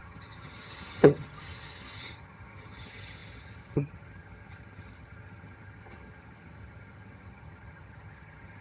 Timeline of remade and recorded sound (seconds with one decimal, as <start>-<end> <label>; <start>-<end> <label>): 0.0-8.6 remade